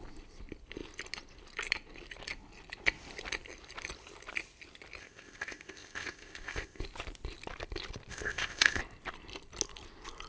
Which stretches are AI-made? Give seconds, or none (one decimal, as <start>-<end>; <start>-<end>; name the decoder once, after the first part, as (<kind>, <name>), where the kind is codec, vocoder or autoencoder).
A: 5.0-6.8 (codec, ZipCodec); 8.1-8.8